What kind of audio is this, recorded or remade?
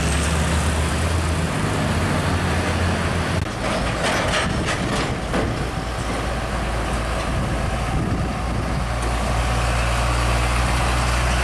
recorded